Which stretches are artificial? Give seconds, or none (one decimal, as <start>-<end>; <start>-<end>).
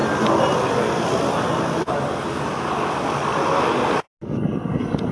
none